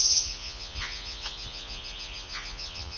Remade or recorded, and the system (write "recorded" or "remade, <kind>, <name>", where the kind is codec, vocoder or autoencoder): remade, vocoder, Vocos